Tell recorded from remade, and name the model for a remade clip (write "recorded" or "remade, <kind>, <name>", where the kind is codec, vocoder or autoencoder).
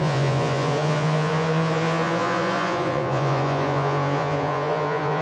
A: remade, vocoder, Vocos